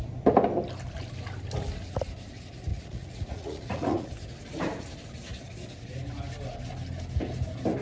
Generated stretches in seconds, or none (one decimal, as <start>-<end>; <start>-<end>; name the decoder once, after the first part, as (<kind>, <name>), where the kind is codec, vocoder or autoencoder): 2.7-4.1 (vocoder, Vocos)